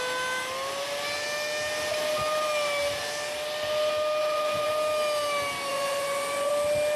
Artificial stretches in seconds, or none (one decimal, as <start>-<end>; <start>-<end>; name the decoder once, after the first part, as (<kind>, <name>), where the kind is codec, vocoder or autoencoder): 4.2-4.7 (vocoder, Vocos); 5.7-6.5